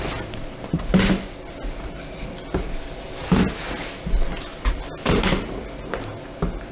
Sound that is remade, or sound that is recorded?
recorded